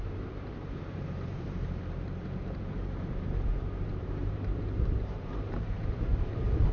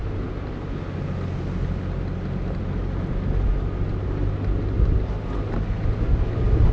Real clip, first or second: second